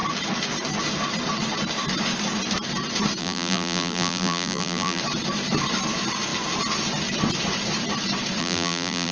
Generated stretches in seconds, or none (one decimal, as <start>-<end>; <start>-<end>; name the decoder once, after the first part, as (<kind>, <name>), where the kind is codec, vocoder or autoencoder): 3.2-5.0 (vocoder, BigVGAN v2); 8.4-9.1